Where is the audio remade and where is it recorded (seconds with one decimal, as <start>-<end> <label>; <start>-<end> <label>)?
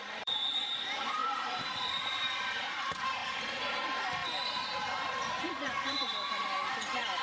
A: 0.0-3.2 remade; 3.2-3.8 recorded; 3.8-4.2 remade; 4.2-5.4 recorded; 5.4-7.2 remade